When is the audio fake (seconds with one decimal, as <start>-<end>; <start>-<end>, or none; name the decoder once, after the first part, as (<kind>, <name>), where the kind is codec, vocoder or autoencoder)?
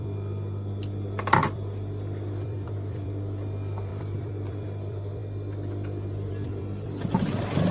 0.0-5.2 (vocoder, BigVGAN v2); 6.3-7.7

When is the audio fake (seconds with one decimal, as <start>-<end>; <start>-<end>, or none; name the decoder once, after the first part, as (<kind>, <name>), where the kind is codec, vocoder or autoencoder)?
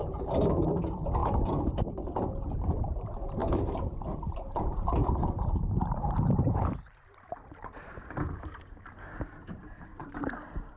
0.5-10.8 (vocoder, BigVGAN v2)